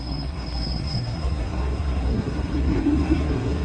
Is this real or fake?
fake